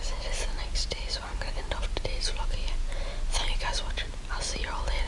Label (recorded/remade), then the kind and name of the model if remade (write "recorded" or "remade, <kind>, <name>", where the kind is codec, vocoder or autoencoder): recorded